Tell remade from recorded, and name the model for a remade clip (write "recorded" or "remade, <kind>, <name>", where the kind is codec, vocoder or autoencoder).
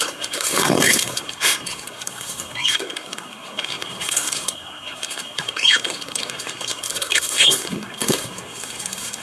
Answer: remade, codec, SNAC